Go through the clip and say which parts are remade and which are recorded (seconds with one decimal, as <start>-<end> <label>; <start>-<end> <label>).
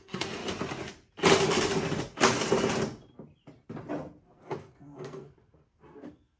0.0-0.4 remade; 0.4-4.2 recorded; 4.2-6.4 remade